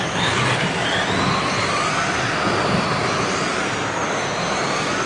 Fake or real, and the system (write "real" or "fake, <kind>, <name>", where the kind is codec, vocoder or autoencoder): real